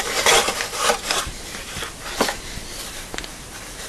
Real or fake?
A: real